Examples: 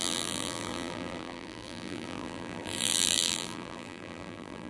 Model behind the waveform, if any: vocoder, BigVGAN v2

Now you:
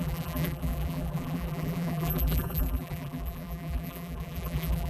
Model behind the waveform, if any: vocoder, BigVGAN v2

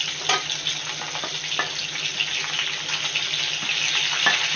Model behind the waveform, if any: none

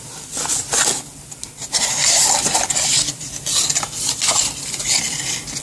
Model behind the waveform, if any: none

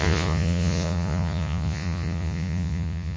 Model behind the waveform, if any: vocoder, Vocos